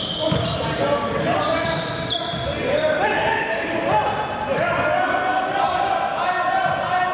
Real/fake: real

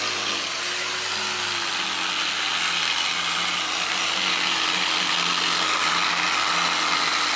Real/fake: real